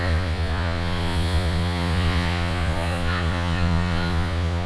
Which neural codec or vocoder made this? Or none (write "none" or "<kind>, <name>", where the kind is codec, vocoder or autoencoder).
vocoder, Vocos